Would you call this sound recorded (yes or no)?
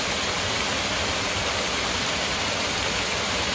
yes